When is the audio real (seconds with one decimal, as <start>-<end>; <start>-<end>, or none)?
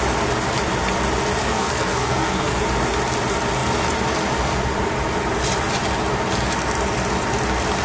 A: 0.0-1.4; 2.6-7.8